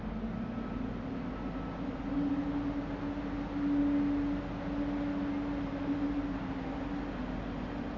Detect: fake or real real